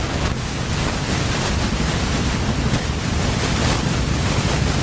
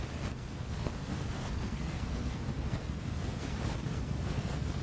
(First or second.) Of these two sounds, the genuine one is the first